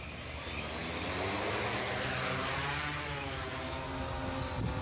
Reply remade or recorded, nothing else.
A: recorded